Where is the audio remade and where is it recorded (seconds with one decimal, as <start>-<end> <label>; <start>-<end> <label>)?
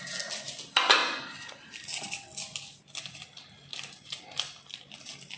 0.0-5.4 recorded